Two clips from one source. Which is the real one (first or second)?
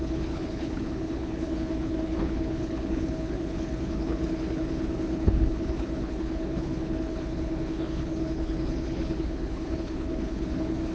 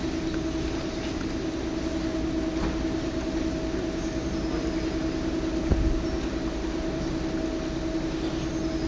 second